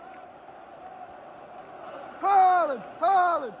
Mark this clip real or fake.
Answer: real